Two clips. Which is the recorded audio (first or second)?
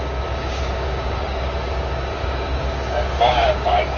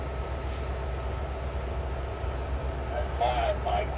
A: second